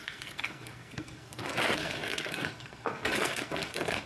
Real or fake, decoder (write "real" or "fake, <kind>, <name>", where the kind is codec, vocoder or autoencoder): fake, codec, SNAC